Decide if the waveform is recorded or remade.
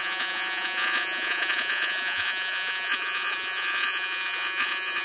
remade